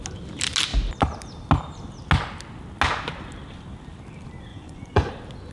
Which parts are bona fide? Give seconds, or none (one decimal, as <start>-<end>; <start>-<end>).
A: 0.0-4.5; 5.1-5.5